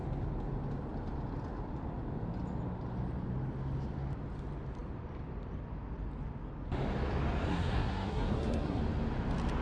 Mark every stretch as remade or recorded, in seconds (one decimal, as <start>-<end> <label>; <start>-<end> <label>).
0.0-7.5 recorded; 7.5-8.8 remade; 8.8-9.6 recorded